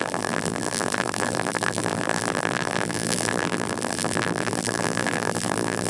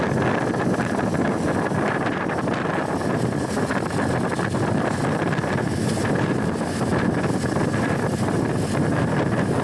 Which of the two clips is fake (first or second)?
first